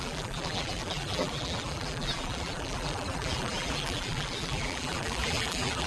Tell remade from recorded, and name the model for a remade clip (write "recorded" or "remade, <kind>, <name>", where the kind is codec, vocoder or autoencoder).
remade, vocoder, BigVGAN v2